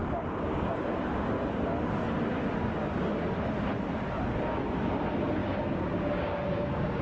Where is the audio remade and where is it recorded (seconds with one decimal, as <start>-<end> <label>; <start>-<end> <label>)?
0.0-0.8 remade; 0.8-5.4 recorded; 5.4-7.0 remade

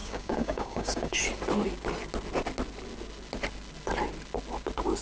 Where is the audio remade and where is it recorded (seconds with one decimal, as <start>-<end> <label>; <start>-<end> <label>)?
0.0-1.2 remade; 1.2-5.0 recorded